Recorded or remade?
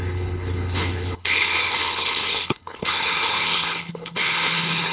remade